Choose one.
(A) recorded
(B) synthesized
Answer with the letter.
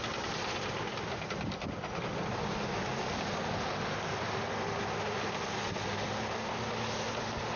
A